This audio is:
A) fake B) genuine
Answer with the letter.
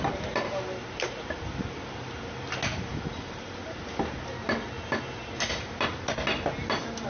B